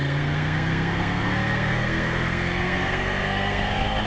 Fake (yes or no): yes